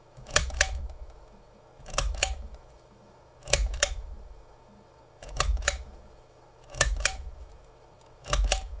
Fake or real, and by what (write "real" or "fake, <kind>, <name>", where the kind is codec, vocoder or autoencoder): fake, autoencoder, DAC-VAE